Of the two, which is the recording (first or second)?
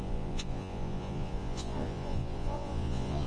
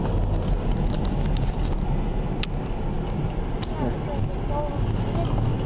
second